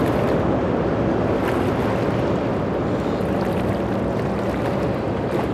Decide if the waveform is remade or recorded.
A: recorded